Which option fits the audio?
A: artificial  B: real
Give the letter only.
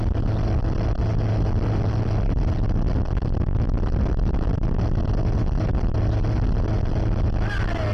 B